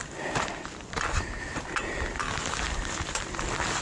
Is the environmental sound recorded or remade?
recorded